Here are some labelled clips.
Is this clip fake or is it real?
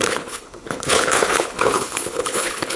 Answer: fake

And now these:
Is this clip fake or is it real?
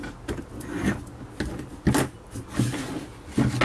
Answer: real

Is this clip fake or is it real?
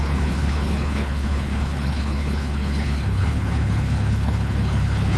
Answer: fake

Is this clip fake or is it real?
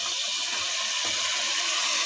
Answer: real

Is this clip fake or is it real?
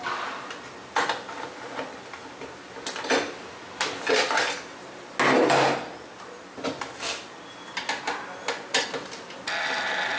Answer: real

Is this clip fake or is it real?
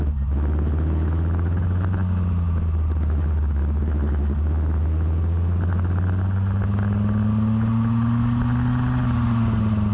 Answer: real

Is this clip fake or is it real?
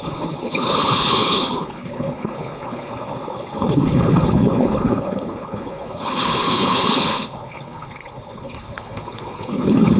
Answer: fake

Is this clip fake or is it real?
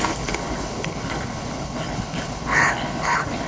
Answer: fake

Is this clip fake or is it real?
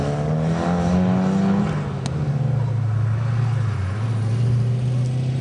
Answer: real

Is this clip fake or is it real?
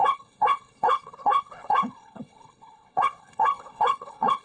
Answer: fake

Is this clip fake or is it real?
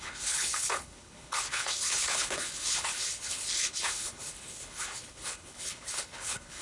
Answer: fake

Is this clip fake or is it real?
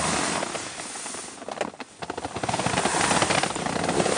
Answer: real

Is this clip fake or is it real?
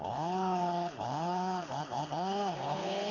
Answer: fake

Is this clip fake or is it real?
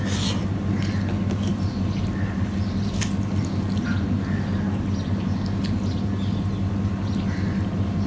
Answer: real